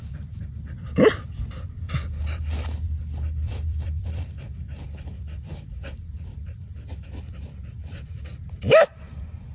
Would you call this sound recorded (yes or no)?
no